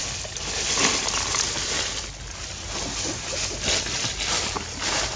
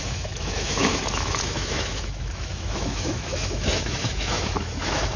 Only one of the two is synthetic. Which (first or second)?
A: second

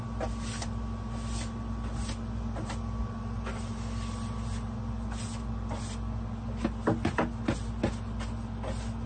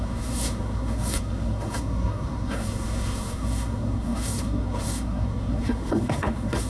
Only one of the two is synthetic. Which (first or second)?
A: second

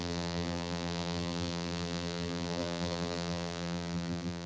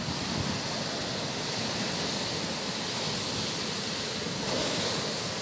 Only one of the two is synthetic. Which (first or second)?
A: first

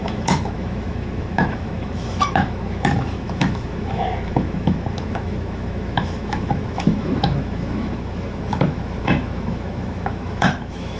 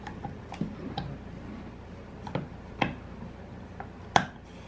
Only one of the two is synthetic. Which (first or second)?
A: first